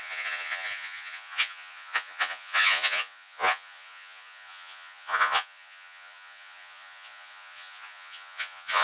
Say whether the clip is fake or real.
fake